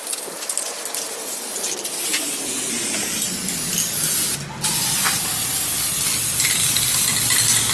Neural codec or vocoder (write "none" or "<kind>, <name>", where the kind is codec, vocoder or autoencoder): none